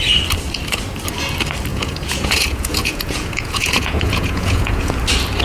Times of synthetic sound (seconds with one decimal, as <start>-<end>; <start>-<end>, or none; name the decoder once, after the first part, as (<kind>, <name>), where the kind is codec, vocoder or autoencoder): 1.7-4.9 (vocoder, Vocos)

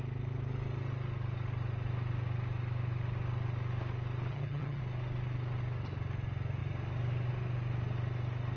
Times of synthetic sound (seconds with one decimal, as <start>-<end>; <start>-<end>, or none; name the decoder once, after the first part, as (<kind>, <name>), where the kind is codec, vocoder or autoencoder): 4.3-4.8 (vocoder, HiFi-GAN)

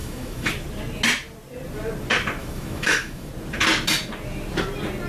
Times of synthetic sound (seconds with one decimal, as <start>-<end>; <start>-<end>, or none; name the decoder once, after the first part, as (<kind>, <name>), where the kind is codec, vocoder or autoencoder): 0.0-0.5 (autoencoder, DAC-VAE); 2.4-3.3

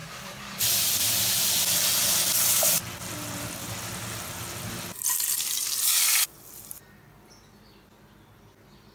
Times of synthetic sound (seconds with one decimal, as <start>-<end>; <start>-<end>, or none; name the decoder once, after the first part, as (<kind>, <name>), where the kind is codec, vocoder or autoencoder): 0.0-0.6 (codec, DAC)

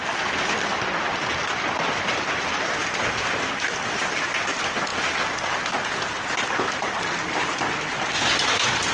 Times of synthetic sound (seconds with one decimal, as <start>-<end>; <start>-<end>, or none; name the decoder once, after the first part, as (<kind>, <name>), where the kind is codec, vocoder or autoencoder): none